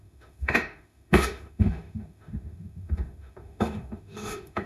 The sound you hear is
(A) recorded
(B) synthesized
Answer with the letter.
B